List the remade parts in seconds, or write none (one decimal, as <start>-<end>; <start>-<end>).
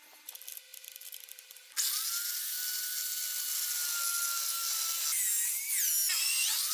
none